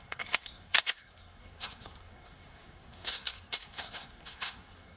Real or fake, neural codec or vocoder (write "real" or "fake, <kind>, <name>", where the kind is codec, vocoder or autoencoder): fake, codec, SNAC